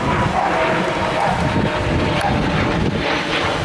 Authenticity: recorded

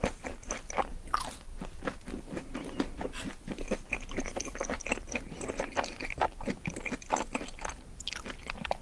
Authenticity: recorded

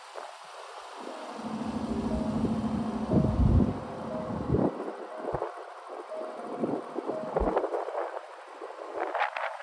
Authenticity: recorded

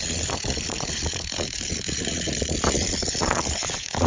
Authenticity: remade